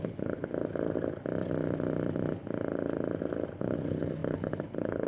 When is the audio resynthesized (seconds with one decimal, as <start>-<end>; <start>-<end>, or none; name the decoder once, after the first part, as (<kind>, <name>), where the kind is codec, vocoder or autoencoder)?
0.0-0.5 (codec, HILCodec); 3.6-5.1

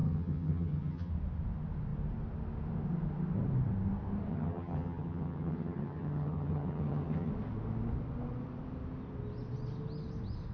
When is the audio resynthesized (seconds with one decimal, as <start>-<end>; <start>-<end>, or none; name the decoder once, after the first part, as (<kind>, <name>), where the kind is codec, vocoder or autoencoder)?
0.0-1.1 (vocoder, HiFi-GAN); 4.3-7.3